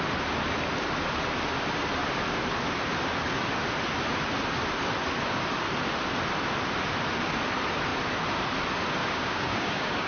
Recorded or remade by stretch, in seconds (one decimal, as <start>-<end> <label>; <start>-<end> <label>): 0.0-9.0 recorded; 9.0-10.1 remade